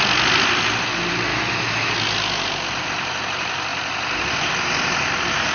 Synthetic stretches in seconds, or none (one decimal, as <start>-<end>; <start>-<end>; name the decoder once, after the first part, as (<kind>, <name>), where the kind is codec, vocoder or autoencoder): 1.3-1.9 (autoencoder, DAC-VAE)